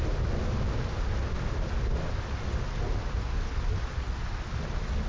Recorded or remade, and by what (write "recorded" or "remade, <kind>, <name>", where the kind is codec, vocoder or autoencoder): recorded